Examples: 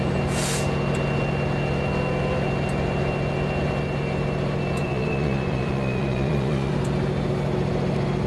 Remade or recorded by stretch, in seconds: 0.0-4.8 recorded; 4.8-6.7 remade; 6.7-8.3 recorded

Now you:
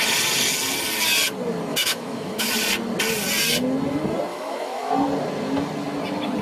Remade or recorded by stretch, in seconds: 0.0-1.7 recorded; 1.7-2.5 remade; 2.5-4.3 recorded; 4.3-4.9 remade; 4.9-6.4 recorded

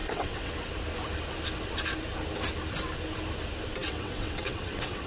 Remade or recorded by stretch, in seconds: 0.0-0.5 remade; 0.5-3.8 recorded; 3.8-5.1 remade

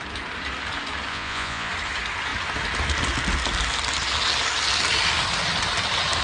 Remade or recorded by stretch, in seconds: 0.0-1.1 recorded; 1.1-1.7 remade; 1.7-6.2 recorded

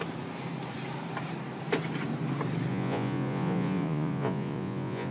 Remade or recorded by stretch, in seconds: 0.0-2.7 recorded; 2.7-5.1 remade